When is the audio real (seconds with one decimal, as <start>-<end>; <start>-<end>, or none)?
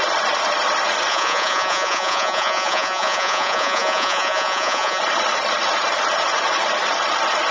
0.0-1.1; 5.0-7.5